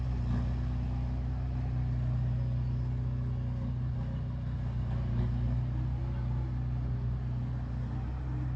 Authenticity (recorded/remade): recorded